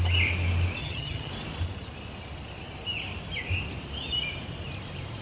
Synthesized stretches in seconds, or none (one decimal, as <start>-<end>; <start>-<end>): 0.8-1.3